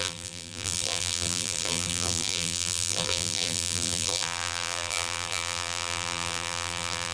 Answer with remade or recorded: remade